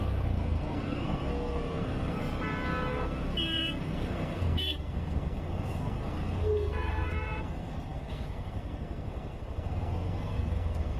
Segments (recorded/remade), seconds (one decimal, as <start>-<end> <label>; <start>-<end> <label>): 0.0-2.2 remade; 2.2-2.9 recorded; 2.9-11.0 remade